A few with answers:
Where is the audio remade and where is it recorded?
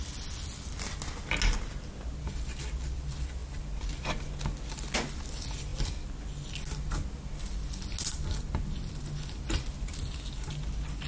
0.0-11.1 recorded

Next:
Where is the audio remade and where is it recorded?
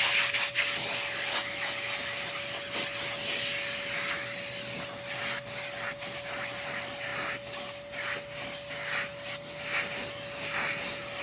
0.0-11.2 recorded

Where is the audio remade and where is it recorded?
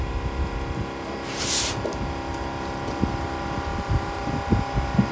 0.0-3.7 recorded; 3.7-4.3 remade; 4.3-5.1 recorded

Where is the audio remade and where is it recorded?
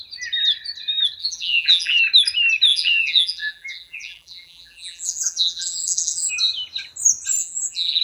0.0-1.2 recorded; 1.2-2.0 remade; 2.0-2.7 recorded; 2.7-6.3 remade; 6.3-7.4 recorded; 7.4-8.0 remade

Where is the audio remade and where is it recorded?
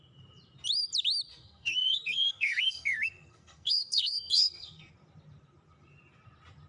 0.0-1.3 recorded; 1.3-4.9 remade; 4.9-6.7 recorded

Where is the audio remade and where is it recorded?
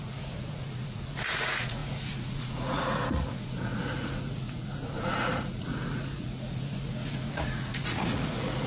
0.0-8.7 remade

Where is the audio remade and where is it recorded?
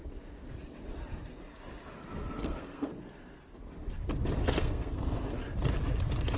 0.0-2.4 recorded; 2.4-3.0 remade; 3.0-4.4 recorded; 4.4-5.3 remade; 5.3-6.4 recorded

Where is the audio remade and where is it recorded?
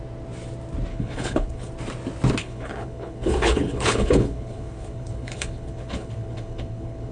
0.0-0.9 recorded; 0.9-1.7 remade; 1.7-2.4 recorded; 2.4-7.1 remade